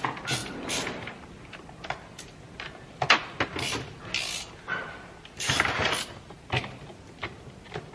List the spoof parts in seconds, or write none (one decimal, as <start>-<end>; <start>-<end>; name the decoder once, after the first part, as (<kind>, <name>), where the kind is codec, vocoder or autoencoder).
none